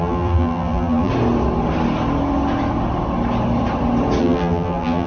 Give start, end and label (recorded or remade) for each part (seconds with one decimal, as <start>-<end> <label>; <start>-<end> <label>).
0.0-1.1 remade; 1.1-4.2 recorded; 4.2-5.1 remade